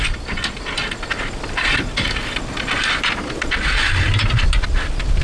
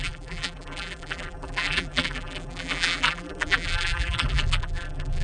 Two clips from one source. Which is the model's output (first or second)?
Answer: second